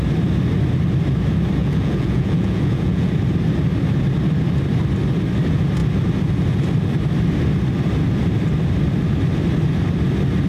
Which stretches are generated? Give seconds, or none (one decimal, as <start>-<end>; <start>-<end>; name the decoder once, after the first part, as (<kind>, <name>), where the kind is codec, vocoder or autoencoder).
1.6-3.1 (vocoder, Vocos)